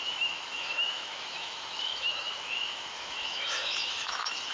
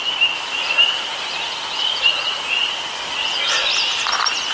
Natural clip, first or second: second